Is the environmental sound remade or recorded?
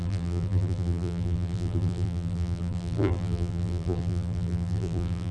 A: remade